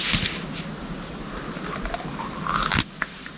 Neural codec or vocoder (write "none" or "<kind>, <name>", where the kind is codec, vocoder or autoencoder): none